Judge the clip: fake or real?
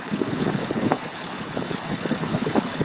fake